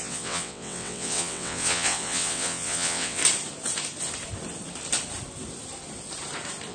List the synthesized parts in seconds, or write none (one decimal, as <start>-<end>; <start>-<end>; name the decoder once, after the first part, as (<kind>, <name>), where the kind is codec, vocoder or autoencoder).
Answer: 0.0-3.2 (vocoder, WaveNeXt)